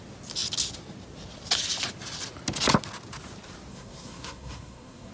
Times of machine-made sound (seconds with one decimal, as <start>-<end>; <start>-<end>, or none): 3.7-5.1